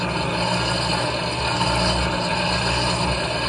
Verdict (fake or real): real